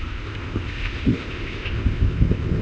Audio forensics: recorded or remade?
remade